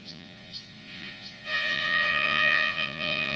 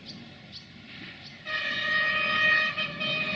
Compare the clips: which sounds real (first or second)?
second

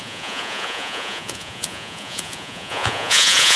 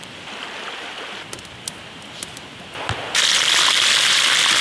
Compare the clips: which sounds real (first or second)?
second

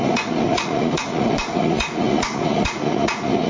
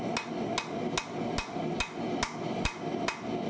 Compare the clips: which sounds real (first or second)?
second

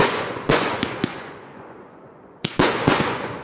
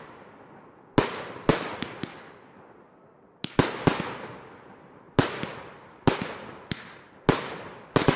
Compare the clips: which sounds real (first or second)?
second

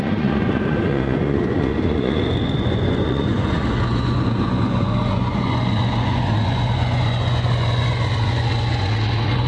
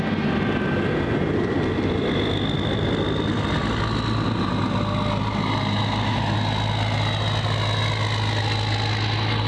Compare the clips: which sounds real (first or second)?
second